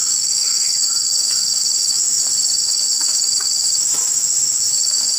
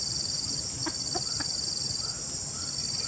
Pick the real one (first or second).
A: second